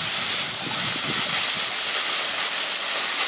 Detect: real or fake real